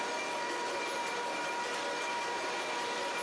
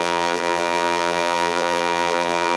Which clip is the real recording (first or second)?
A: first